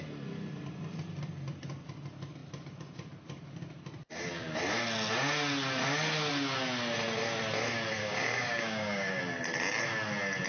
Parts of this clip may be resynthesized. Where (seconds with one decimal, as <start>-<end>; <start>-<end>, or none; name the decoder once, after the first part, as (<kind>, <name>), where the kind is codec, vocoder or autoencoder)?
8.0-9.2 (codec, DAC)